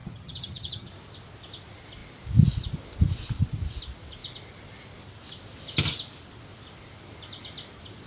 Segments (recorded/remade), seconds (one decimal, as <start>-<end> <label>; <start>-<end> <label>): 0.0-0.9 remade; 0.9-8.1 recorded